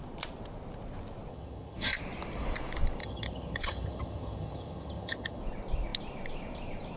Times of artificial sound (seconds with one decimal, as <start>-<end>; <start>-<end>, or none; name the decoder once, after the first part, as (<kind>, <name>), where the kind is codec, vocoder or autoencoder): 1.3-2.0 (vocoder, HiFi-GAN); 3.0-5.4